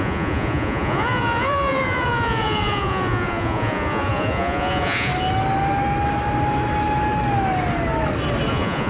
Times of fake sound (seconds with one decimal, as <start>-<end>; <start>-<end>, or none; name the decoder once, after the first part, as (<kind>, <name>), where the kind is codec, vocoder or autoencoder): 0.0-5.1 (vocoder, Vocos); 8.5-8.9